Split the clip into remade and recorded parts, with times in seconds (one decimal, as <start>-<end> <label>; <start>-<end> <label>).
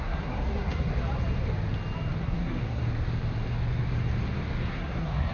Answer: 0.0-0.9 remade; 0.9-2.2 recorded; 2.2-2.8 remade; 2.8-4.7 recorded; 4.7-5.3 remade